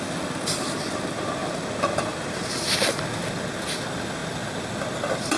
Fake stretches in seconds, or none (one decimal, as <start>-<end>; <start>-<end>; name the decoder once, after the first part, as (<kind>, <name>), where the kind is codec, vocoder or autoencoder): none